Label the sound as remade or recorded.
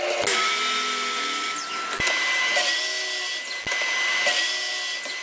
recorded